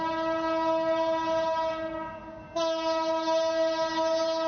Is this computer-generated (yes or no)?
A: no